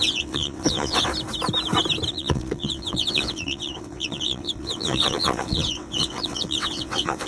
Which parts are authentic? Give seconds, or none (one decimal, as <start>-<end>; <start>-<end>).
1.1-2.1